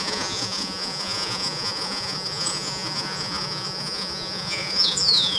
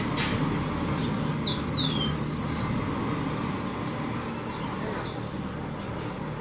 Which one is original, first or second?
second